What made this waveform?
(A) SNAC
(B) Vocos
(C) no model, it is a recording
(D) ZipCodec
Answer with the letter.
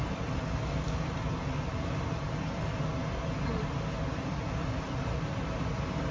C